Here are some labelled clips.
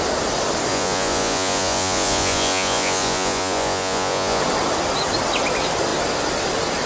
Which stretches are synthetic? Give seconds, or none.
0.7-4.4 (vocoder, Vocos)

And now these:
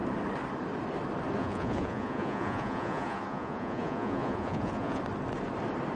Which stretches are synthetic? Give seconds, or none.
1.4-5.0 (vocoder, Vocos)

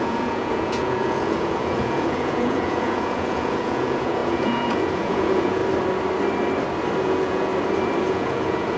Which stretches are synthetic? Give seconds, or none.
0.0-5.6 (vocoder, Vocos); 7.0-7.5; 8.0-8.8